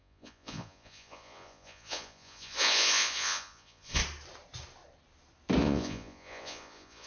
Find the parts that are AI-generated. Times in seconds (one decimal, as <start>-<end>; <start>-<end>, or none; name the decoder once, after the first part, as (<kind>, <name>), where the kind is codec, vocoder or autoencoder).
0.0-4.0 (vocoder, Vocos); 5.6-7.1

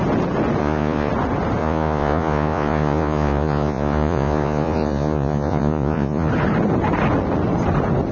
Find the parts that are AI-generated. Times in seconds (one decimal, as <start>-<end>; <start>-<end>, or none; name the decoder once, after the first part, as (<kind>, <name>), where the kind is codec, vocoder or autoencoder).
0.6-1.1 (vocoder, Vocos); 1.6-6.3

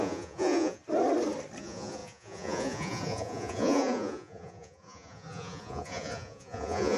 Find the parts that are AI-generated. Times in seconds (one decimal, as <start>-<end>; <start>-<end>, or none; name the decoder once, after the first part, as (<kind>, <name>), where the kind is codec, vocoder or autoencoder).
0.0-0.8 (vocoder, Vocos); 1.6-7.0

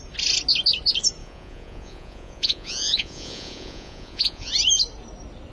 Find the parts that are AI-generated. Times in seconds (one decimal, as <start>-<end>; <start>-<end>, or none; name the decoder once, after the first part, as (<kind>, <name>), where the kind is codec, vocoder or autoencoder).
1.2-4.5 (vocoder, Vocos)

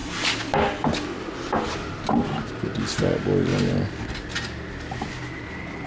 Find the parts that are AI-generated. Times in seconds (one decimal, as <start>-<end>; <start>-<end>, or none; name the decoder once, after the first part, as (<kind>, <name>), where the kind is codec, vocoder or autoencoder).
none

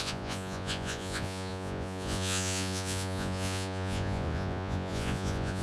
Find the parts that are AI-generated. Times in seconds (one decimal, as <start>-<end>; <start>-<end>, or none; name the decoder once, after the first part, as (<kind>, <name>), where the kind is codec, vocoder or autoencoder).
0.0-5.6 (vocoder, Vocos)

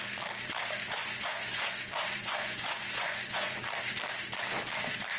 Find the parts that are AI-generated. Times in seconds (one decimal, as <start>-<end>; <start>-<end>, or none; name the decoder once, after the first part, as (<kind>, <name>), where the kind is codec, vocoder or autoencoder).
0.8-3.6 (vocoder, Vocos)